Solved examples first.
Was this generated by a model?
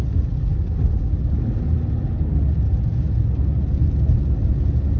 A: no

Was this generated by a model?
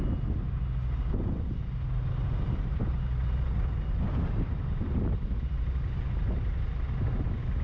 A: no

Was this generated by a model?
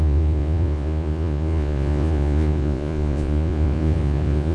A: yes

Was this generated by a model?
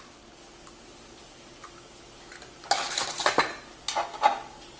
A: no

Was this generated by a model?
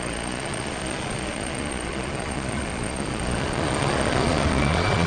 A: yes